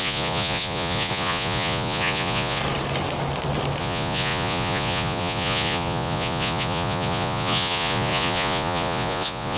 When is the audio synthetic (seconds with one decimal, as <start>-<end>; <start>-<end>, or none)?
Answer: 0.0-2.6; 3.8-9.6